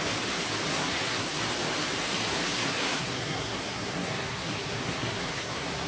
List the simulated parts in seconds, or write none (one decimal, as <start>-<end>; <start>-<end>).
0.7-1.4; 2.3-5.9